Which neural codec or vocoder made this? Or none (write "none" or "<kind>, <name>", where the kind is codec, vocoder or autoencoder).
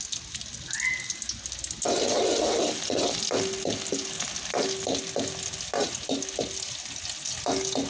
none